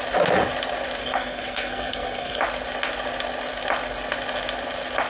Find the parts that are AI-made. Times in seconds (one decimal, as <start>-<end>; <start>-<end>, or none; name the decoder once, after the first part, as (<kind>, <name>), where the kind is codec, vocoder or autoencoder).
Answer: 1.0-2.4 (codec, SNAC)